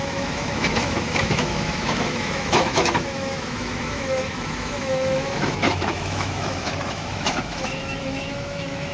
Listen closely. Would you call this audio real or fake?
fake